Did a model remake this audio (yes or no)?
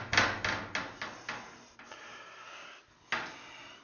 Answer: no